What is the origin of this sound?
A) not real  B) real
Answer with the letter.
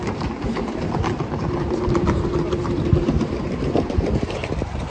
A